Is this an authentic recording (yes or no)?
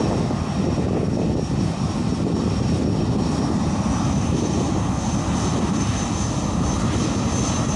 yes